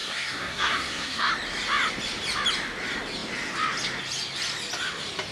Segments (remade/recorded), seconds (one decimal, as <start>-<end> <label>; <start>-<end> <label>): 0.0-1.3 remade; 1.3-5.3 recorded